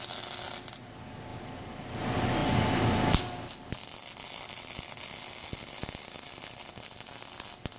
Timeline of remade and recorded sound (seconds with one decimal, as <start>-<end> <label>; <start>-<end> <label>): 0.0-7.8 recorded